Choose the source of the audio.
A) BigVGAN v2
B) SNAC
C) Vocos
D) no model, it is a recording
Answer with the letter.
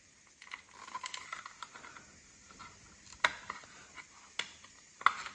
D